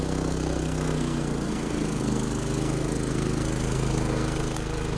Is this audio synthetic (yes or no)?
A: yes